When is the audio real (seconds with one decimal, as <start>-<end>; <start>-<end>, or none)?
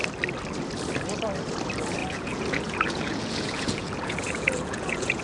0.0-2.0